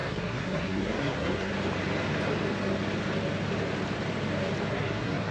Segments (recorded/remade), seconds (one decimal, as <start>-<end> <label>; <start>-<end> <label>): 0.0-1.5 remade; 1.5-4.7 recorded; 4.7-5.3 remade